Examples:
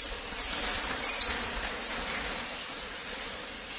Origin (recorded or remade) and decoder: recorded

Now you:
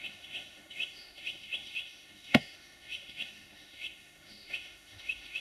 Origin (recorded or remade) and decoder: remade, autoencoder, DAC-VAE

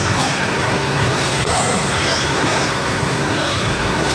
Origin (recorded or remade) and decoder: remade, codec, SNAC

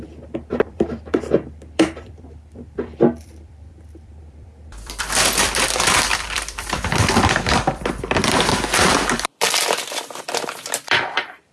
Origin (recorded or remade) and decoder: remade, vocoder, BigVGAN v2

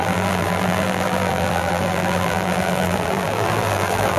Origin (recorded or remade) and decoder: remade, vocoder, BigVGAN v2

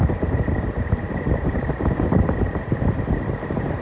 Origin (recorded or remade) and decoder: remade, vocoder, BigVGAN v2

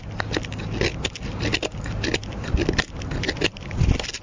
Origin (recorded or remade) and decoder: recorded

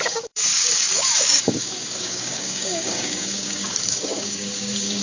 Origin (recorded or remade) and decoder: remade, codec, DAC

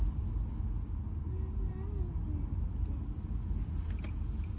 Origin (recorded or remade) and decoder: recorded